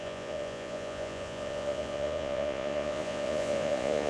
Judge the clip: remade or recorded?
remade